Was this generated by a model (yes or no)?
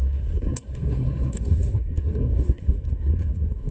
yes